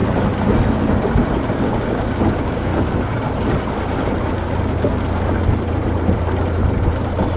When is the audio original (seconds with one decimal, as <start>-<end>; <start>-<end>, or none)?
0.0-1.6; 2.7-7.4